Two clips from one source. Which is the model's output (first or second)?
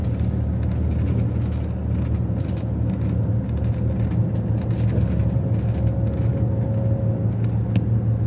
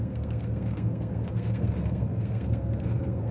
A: second